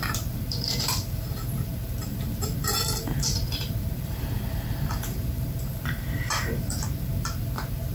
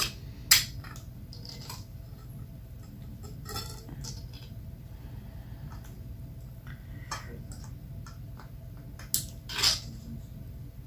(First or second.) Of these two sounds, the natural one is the second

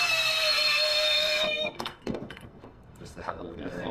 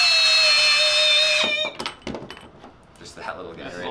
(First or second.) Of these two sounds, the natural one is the second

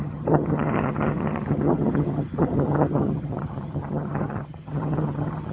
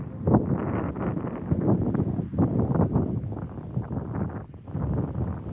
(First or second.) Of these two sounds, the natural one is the second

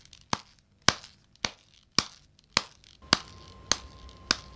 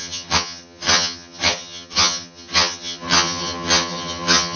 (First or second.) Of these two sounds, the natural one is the first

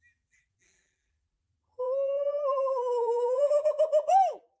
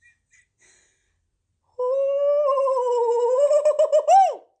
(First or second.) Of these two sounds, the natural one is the second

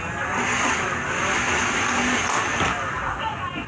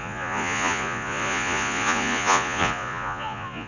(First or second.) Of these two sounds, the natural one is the first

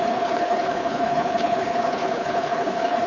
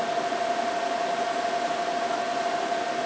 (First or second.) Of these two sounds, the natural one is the second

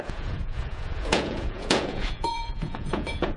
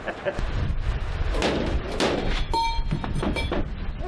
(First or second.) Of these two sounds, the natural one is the second